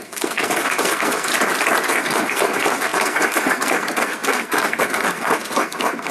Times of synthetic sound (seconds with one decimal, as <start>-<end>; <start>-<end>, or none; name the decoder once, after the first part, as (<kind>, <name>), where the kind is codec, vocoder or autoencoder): 0.0-1.3 (codec, SNAC); 1.9-6.1